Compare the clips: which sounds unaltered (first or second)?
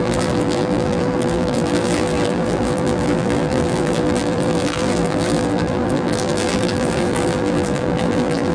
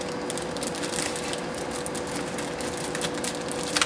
second